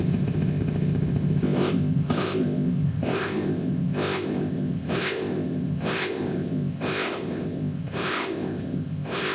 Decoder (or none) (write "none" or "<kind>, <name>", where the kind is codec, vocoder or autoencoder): codec, ZipCodec